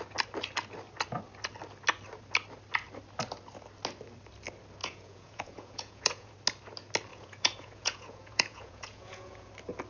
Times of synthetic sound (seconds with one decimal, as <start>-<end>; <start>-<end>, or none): 4.8-6.3; 7.1-9.5